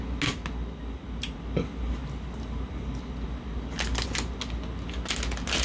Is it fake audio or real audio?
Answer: real